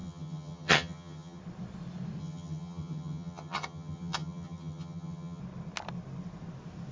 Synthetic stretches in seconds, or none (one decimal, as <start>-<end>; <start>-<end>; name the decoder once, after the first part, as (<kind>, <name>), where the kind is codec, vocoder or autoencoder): 0.0-1.4 (vocoder, HiFi-GAN); 2.2-5.4